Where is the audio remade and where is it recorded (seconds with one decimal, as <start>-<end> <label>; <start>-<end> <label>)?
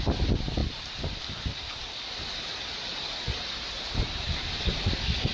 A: 0.0-5.3 recorded